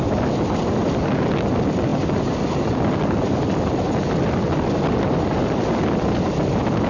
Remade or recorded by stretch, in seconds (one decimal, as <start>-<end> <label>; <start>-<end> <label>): 0.0-6.9 recorded